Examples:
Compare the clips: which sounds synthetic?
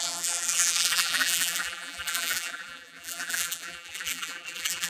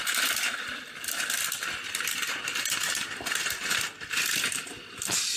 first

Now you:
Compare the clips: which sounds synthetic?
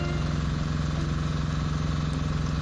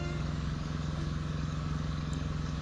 second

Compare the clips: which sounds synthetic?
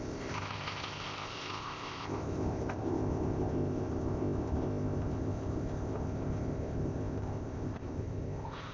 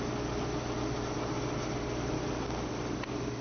first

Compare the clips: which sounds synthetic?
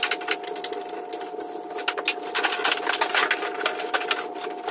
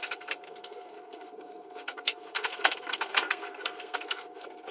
second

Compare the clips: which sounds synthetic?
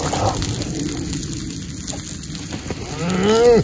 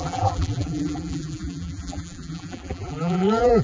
second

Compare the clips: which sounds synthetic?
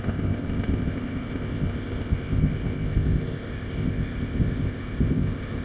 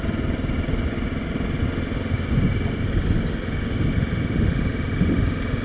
first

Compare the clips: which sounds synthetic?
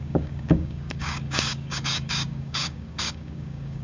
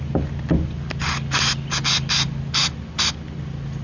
first